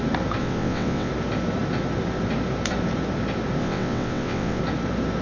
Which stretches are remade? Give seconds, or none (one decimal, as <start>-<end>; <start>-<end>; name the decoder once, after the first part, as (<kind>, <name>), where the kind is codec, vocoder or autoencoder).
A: 0.4-1.1 (vocoder, WaveNeXt); 3.6-4.6